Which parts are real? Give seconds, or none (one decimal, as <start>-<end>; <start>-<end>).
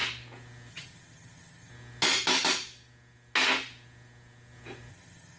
0.0-0.7; 1.7-4.9